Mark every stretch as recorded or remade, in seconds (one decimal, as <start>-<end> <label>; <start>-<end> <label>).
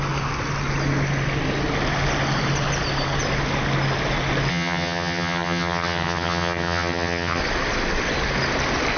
0.0-4.5 recorded; 4.5-7.4 remade; 7.4-9.0 recorded